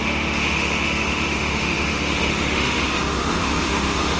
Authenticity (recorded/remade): remade